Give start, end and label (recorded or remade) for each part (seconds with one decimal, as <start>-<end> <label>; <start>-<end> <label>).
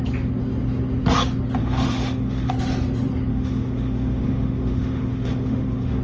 0.0-1.6 recorded; 1.6-2.5 remade; 2.5-3.3 recorded; 3.3-6.0 remade